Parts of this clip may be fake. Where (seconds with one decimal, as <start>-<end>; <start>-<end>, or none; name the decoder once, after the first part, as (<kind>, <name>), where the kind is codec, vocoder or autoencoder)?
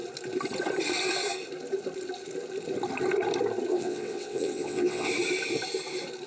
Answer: 3.7-5.1 (vocoder, WaveNeXt)